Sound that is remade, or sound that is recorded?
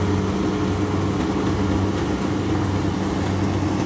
recorded